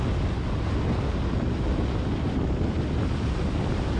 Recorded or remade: recorded